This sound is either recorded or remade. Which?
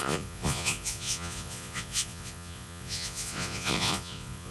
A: remade